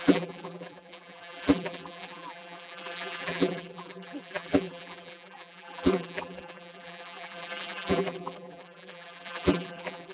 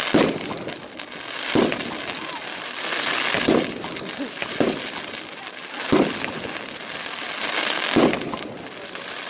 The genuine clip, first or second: second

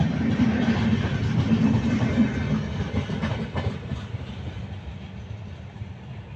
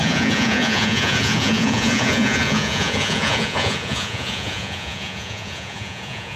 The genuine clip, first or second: first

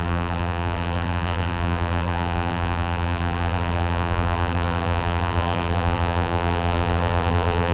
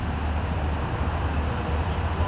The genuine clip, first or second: second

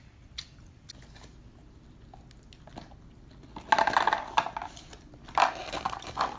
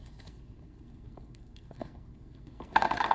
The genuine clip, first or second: first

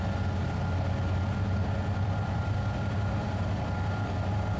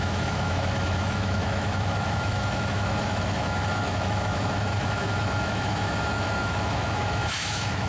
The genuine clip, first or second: first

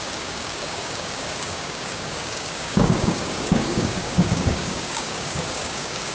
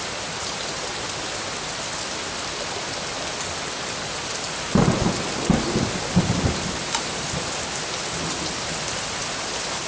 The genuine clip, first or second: second